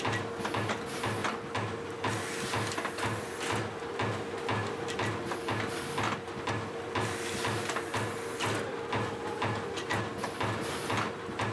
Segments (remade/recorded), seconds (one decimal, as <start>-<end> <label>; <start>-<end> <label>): 0.0-11.5 recorded